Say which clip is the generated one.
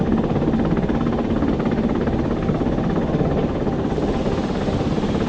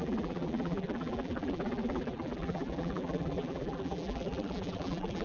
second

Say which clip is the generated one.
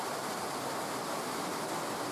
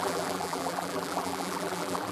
second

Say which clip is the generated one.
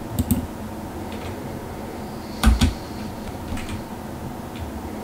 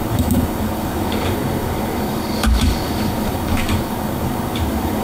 second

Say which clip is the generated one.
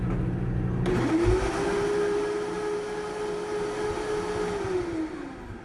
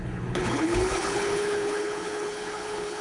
second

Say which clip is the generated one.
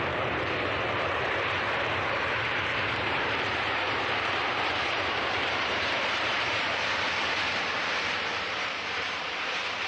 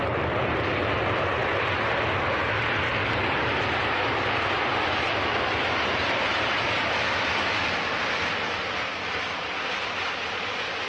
first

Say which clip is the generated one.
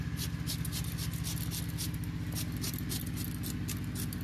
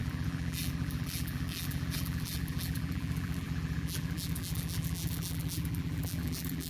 second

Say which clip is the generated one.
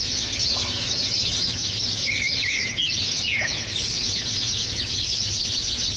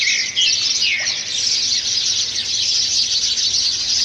first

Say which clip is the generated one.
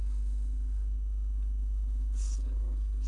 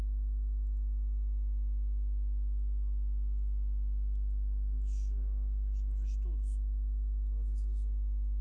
first